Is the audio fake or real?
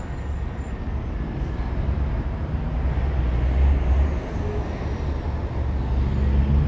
real